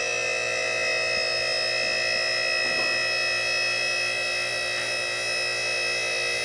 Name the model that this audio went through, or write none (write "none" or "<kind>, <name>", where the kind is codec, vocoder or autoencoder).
none